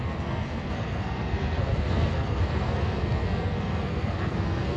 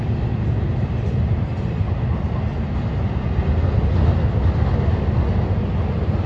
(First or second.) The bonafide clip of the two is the second